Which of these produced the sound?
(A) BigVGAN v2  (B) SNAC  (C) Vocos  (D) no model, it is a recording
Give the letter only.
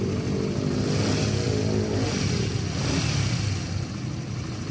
D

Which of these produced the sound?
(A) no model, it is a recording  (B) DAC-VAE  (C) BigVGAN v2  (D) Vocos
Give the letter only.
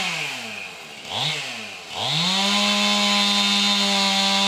A